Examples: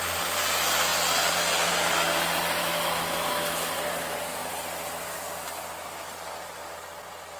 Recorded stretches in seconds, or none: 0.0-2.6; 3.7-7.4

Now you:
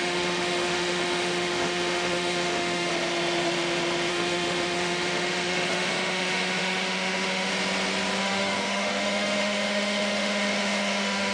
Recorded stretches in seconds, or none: 2.9-4.1; 7.5-8.2

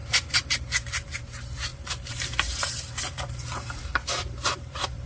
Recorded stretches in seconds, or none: 0.5-1.7

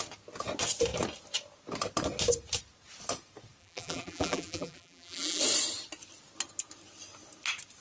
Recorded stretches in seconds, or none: 0.0-3.6; 5.4-7.8

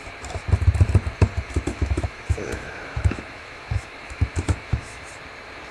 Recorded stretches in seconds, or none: 0.0-1.7; 5.1-5.7